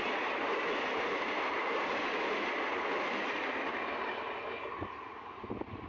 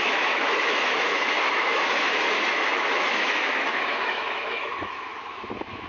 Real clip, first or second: first